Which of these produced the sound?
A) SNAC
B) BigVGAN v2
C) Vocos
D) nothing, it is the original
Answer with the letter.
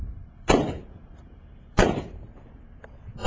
B